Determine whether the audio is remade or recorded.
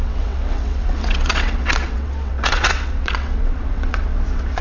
remade